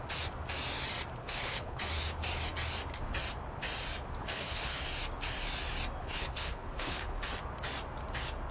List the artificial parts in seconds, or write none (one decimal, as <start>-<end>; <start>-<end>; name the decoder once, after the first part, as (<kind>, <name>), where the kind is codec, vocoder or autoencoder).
1.2-1.8 (codec, HILCodec); 4.2-4.8; 6.0-7.2